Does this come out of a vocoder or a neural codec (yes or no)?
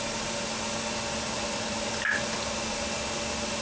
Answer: no